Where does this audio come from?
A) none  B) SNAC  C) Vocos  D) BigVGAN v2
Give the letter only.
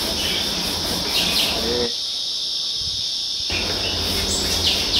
A